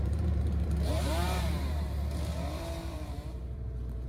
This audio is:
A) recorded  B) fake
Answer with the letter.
B